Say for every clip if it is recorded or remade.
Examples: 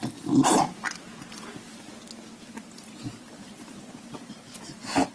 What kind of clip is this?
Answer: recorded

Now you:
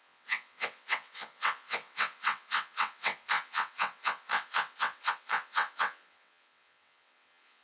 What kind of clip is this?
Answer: remade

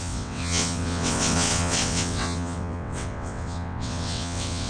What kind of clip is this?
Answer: remade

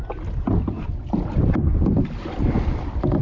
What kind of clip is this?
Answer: recorded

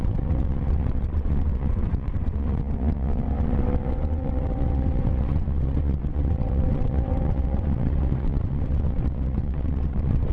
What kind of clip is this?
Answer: remade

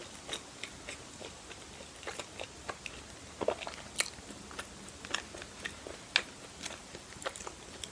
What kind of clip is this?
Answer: recorded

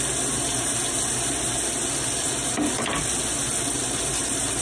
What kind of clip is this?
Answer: recorded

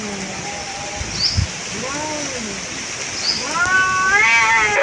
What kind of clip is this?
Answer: recorded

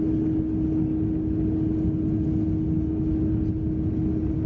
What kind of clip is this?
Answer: recorded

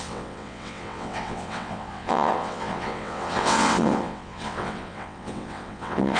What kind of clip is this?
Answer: remade